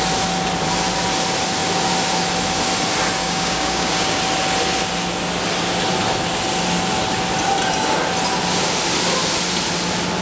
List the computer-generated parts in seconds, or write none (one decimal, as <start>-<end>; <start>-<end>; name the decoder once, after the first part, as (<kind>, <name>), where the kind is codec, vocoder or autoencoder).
3.2-4.2 (codec, DAC)